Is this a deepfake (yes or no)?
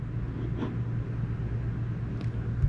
no